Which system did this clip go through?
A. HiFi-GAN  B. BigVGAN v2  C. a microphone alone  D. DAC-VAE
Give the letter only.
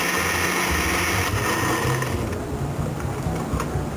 C